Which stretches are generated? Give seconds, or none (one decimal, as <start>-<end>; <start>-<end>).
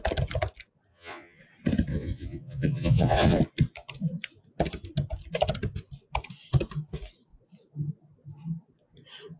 0.9-1.4; 1.9-3.4